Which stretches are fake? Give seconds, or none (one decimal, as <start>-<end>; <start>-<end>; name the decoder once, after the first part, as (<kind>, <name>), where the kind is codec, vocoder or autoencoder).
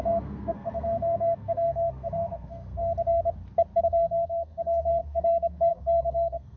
0.0-2.8 (codec, SNAC); 3.8-6.6